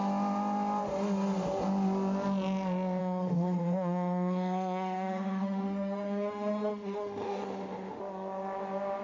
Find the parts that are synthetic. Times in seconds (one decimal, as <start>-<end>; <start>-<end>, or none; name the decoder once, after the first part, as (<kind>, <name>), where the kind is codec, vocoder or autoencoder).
3.0-8.0 (autoencoder, DAC-VAE)